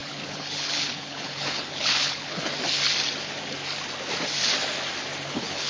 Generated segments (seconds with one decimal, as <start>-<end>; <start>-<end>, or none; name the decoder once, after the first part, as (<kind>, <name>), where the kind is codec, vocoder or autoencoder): 0.0-2.5 (codec, HILCodec); 5.3-5.7